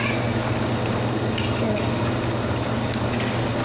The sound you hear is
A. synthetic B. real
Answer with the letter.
B